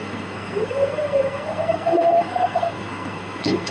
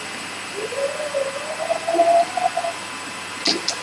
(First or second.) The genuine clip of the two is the second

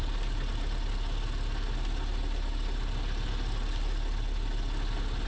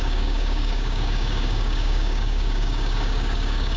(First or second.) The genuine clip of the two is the first